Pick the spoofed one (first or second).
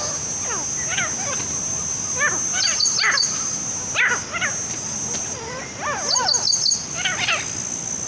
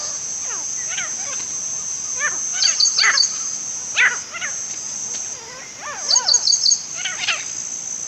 second